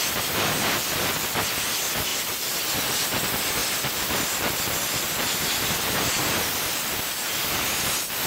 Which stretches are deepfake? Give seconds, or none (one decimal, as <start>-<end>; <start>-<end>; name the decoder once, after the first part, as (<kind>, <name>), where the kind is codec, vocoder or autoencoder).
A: 2.1-2.6 (vocoder, BigVGAN v2)